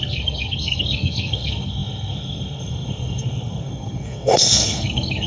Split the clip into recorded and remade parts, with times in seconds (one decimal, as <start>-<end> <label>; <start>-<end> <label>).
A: 0.0-5.3 remade